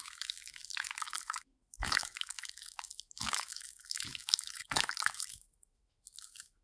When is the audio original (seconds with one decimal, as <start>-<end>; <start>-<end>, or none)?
none